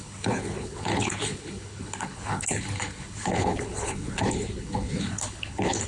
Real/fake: fake